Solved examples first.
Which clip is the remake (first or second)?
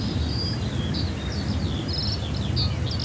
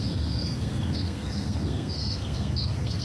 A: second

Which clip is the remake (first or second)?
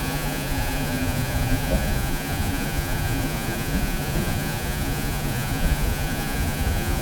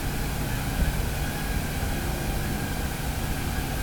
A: first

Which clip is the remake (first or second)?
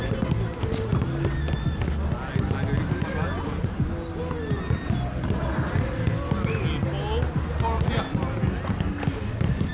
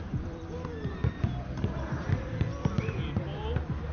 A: second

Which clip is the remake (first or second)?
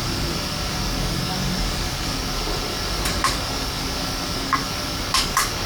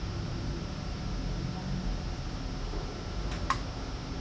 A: first